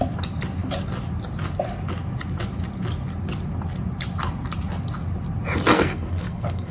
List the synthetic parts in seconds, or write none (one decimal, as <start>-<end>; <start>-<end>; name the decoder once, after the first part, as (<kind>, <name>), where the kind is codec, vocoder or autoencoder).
5.7-6.7 (codec, SNAC)